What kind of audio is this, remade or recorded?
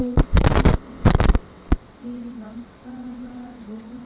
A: remade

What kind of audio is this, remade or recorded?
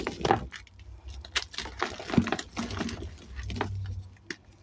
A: recorded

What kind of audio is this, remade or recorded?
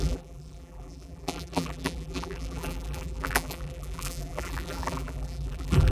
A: remade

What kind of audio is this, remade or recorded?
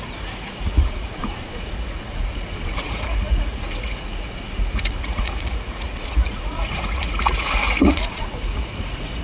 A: remade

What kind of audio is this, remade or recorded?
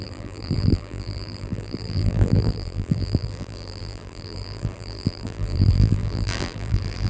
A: remade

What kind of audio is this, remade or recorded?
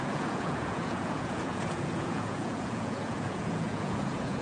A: remade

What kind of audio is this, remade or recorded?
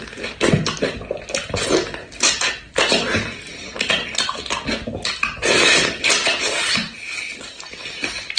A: recorded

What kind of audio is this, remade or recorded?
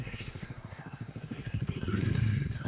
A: remade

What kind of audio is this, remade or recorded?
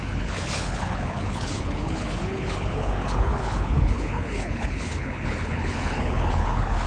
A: remade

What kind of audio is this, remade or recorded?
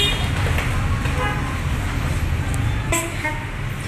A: recorded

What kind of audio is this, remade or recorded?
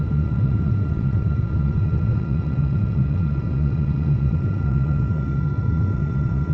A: remade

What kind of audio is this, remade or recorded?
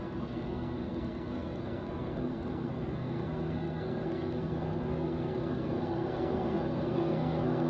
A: remade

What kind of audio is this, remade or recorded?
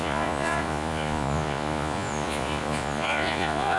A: remade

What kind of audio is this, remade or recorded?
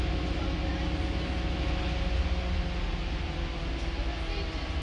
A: recorded